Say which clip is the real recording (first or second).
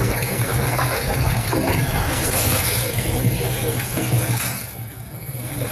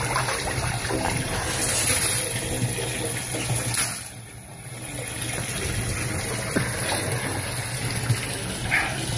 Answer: second